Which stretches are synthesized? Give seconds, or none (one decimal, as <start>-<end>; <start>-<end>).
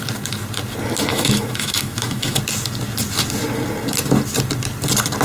1.1-2.4